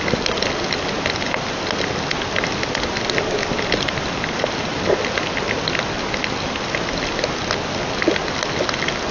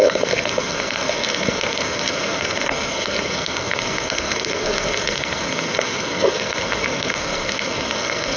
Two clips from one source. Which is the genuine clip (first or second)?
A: first